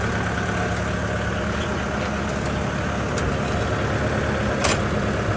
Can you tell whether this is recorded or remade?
recorded